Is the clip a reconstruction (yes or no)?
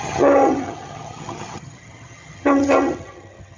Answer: yes